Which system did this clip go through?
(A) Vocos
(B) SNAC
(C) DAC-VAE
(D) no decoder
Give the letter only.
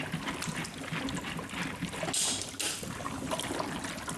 D